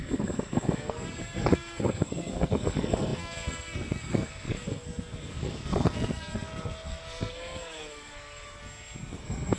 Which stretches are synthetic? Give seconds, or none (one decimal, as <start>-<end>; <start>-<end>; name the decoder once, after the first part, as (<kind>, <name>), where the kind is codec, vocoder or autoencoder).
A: 0.0-8.6 (codec, SNAC); 9.1-9.6